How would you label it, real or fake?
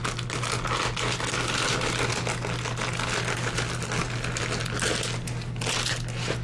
real